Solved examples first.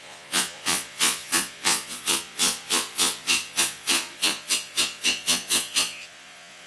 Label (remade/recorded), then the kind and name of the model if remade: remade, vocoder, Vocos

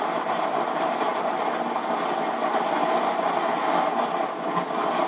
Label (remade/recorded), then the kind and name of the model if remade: recorded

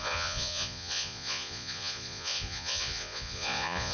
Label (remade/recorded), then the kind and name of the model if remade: remade, vocoder, Vocos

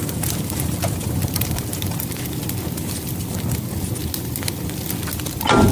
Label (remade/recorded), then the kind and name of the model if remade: recorded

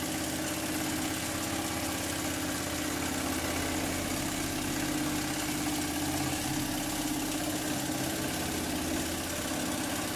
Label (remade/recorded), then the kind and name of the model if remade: recorded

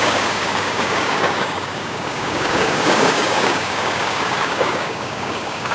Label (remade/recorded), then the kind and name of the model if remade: remade, codec, DAC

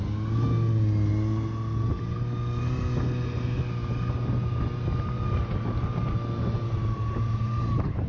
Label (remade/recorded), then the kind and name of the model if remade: recorded